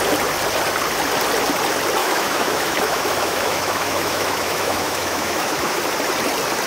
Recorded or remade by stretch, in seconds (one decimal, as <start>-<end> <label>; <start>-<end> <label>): 0.0-2.0 recorded; 2.0-5.8 remade; 5.8-6.7 recorded